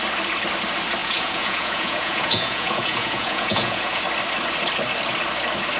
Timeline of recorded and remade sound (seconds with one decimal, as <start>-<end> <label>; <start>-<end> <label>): 0.0-1.0 recorded; 1.0-4.0 remade; 4.0-5.8 recorded